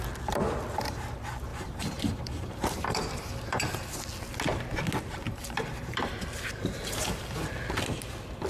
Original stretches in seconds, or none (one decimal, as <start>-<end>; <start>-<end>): 0.0-1.5; 3.7-5.1; 7.5-8.5